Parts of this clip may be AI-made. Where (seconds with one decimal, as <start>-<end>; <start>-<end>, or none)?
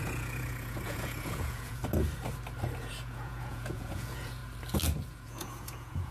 0.0-1.8; 2.8-4.4; 5.1-6.1